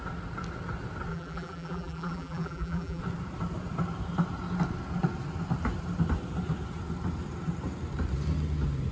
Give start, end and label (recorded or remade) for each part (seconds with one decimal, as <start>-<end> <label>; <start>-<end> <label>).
0.0-1.1 recorded; 1.1-3.0 remade; 3.0-8.9 recorded